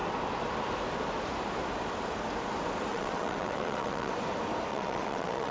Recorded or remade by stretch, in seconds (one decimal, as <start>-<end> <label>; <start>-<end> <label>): 0.0-2.9 recorded; 2.9-4.1 remade; 4.1-4.7 recorded; 4.7-5.5 remade